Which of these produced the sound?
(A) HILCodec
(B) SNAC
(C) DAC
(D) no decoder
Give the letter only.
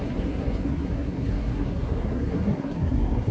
B